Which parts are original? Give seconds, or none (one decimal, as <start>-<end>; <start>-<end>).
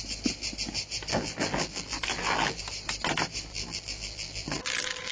0.0-1.1; 2.6-3.5